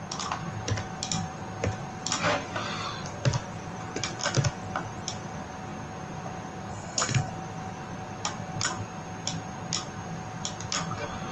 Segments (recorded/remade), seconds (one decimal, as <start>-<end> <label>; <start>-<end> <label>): 0.0-6.7 recorded; 6.7-7.3 remade; 7.3-11.3 recorded